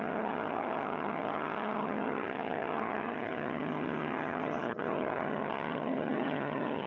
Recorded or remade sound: remade